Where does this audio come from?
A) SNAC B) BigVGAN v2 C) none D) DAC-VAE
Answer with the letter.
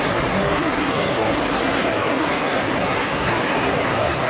A